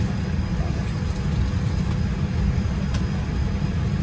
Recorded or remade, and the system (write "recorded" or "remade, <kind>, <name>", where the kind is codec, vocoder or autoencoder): recorded